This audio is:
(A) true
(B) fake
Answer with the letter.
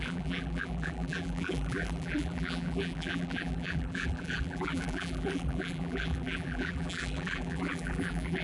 B